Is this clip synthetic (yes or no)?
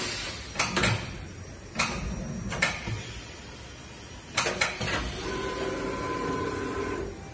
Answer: no